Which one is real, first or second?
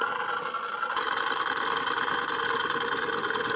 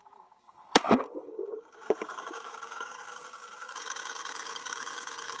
first